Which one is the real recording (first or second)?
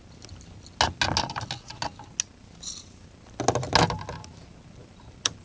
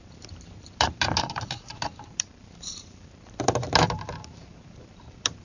first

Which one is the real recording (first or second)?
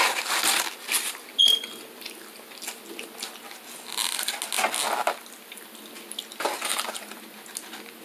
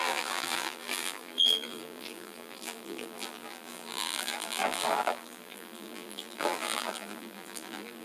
first